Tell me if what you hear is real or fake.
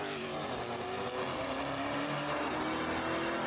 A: real